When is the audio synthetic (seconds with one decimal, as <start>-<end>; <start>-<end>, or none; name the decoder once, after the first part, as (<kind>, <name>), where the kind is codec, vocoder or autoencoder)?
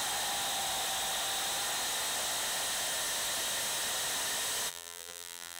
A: 4.7-5.6 (vocoder, BigVGAN v2)